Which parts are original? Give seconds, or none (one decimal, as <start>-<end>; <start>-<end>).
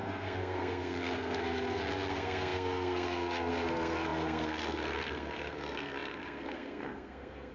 none